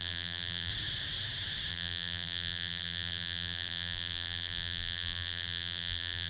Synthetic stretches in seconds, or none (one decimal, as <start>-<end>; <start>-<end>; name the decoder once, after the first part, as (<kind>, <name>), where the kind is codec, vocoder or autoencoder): 0.0-0.7 (vocoder, BigVGAN v2); 1.7-6.3